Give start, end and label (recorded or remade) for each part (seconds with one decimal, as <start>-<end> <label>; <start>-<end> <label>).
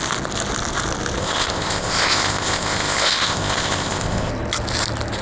0.0-1.2 recorded; 1.2-4.3 remade; 4.3-5.2 recorded